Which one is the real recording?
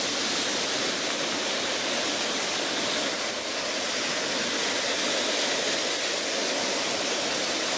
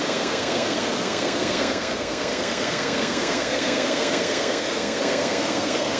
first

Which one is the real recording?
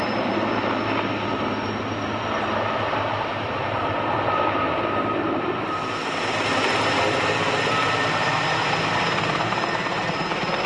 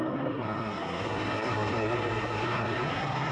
first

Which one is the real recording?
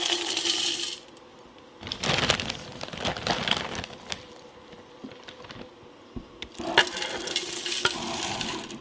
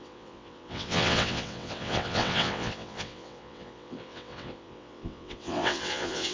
first